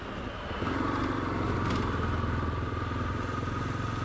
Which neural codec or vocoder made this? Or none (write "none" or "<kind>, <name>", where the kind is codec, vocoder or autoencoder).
none